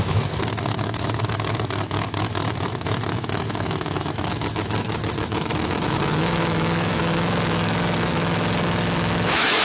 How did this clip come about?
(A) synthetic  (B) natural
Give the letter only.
A